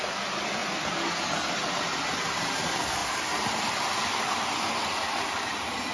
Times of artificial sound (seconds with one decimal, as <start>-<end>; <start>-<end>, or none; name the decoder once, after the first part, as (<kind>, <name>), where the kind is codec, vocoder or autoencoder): none